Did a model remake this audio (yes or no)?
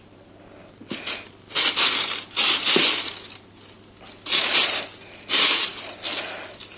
no